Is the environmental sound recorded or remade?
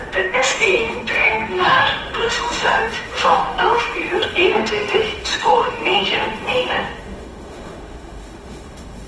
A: remade